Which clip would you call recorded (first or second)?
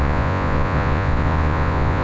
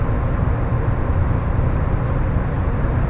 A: second